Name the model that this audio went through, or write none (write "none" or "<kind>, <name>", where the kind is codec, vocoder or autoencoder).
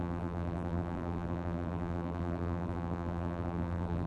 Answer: vocoder, BigVGAN v2